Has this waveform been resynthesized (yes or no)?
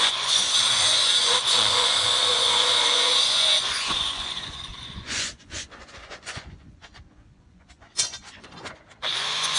yes